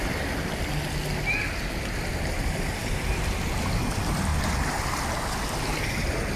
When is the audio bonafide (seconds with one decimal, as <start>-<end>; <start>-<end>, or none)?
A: 0.0-4.3; 4.8-6.4